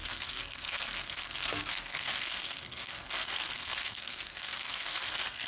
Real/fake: fake